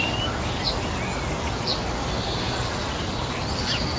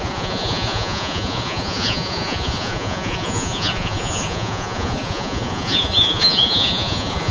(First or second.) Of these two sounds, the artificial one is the second